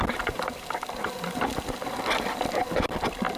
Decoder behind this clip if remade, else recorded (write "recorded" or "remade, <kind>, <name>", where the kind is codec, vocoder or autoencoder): recorded